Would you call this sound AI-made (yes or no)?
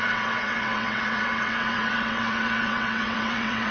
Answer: yes